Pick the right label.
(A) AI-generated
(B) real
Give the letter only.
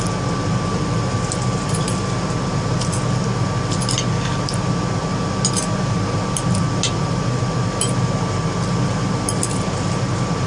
B